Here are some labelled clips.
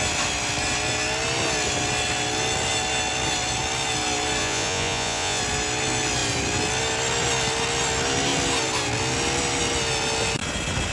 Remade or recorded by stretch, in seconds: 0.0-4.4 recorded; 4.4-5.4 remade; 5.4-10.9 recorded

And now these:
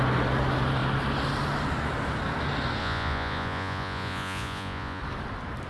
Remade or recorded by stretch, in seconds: 0.0-2.8 recorded; 2.8-5.0 remade; 5.0-5.7 recorded

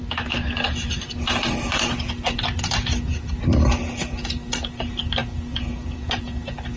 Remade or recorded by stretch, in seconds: 0.0-5.2 recorded; 5.2-6.2 remade; 6.2-6.8 recorded

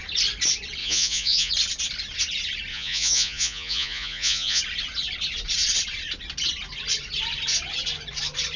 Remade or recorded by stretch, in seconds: 0.0-0.8 recorded; 0.8-1.5 remade; 1.5-2.7 recorded; 2.7-4.6 remade; 4.6-8.6 recorded

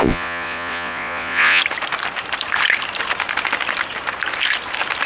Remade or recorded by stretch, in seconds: 0.0-1.6 remade; 1.6-5.1 recorded

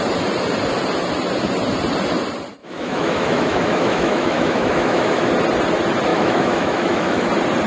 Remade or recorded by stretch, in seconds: 0.0-2.6 recorded; 2.6-5.3 remade; 5.3-6.1 recorded; 6.1-7.3 remade; 7.3-7.7 recorded